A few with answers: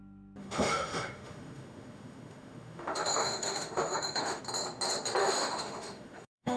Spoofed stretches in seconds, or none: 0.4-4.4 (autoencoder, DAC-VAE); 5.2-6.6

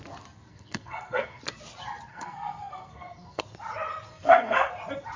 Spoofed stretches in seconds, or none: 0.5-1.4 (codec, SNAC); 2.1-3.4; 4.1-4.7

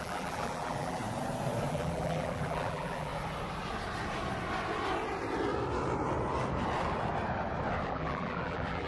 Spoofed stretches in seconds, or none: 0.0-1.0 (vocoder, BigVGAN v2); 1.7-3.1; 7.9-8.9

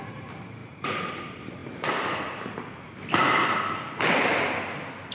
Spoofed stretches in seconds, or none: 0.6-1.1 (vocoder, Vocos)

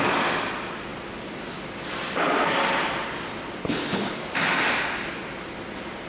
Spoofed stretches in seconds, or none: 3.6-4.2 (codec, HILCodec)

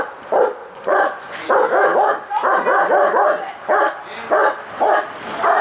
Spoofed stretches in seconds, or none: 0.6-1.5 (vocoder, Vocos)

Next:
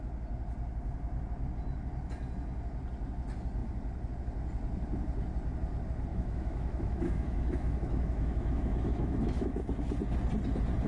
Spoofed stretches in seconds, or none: 6.1-9.6 (autoencoder, DAC-VAE)

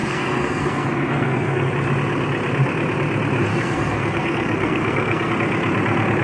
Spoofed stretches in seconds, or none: 0.0-1.7 (codec, SNAC); 3.5-5.3